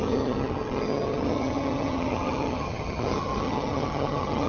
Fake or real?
fake